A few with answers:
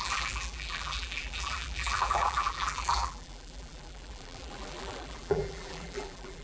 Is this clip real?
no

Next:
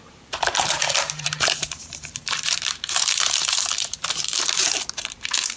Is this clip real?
no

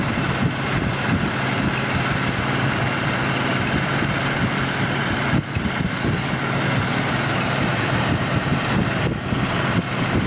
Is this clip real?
no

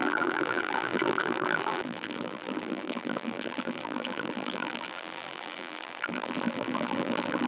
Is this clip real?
no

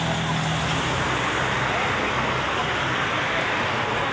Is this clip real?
no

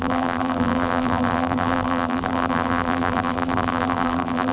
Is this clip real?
no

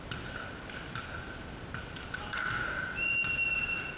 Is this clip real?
yes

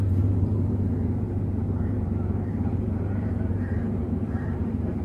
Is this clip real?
no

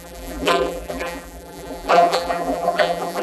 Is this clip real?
no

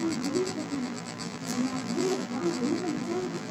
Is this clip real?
no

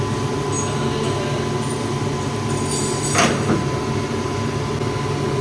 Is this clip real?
yes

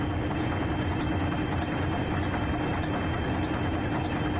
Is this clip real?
yes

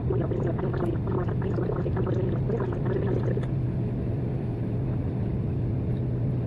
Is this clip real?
yes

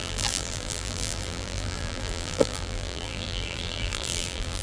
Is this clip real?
no